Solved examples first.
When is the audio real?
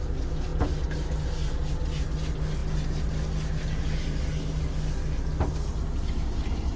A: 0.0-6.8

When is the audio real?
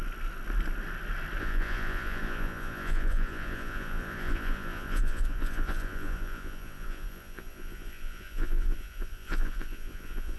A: 0.0-1.4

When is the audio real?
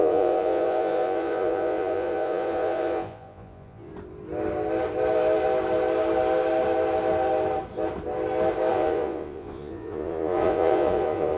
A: 3.9-8.7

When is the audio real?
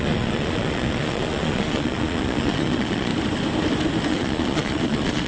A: 3.1-4.1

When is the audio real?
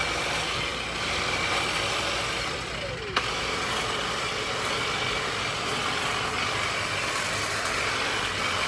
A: 0.0-8.7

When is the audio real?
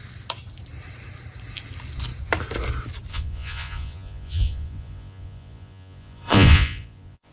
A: 0.0-3.1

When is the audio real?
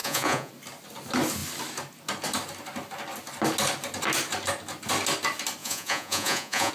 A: 0.5-5.6